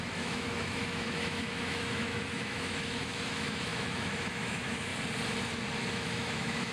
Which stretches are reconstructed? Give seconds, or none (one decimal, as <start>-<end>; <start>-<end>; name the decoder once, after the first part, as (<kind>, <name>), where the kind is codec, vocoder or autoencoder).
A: 0.0-4.9 (autoencoder, DAC-VAE); 5.9-6.7